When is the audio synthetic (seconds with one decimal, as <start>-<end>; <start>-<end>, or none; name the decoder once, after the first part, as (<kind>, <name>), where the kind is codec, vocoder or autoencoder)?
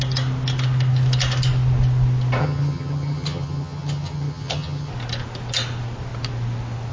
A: 2.4-4.9 (vocoder, HiFi-GAN)